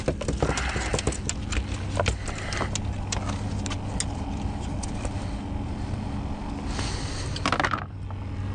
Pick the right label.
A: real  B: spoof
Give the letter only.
A